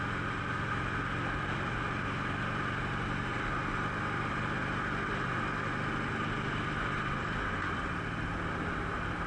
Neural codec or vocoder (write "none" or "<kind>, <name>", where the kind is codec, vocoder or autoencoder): none